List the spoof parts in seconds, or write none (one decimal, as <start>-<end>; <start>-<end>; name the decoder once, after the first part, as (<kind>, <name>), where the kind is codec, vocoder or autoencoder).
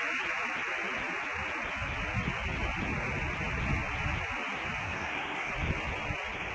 4.8-5.5 (codec, SNAC)